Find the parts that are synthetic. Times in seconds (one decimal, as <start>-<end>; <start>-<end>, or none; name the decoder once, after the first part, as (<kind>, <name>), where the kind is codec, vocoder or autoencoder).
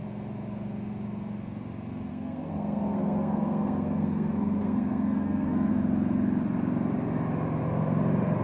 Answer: 2.1-5.7 (codec, SNAC)